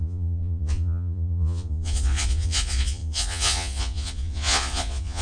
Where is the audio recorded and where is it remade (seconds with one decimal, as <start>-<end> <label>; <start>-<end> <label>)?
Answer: 0.0-5.2 remade